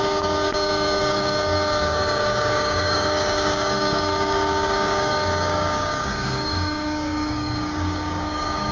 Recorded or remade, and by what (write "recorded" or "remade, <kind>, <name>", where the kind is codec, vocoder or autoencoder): remade, codec, DAC